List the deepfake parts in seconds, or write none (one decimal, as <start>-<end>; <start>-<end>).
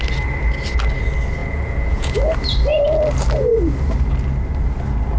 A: 1.4-2.2